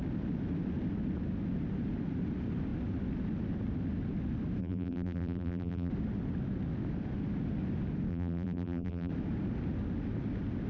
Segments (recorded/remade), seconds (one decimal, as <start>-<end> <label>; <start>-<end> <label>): 0.0-4.6 recorded; 4.6-5.9 remade; 5.9-8.1 recorded; 8.1-9.1 remade; 9.1-10.7 recorded